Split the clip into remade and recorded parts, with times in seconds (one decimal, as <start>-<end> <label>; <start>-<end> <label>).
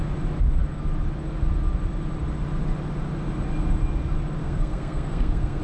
0.0-4.4 recorded; 4.4-5.6 remade